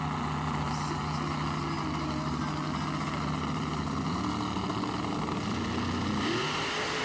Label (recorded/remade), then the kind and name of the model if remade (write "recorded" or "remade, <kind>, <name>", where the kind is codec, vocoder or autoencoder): recorded